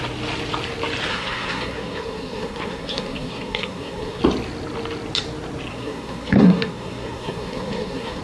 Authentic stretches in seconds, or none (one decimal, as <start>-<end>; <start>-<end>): 0.0-1.1; 4.2-5.7

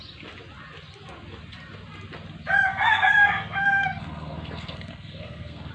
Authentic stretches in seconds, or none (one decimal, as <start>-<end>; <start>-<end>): 0.0-2.7

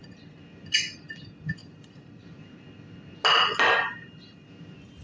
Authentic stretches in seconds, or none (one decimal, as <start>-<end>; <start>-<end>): 0.0-5.0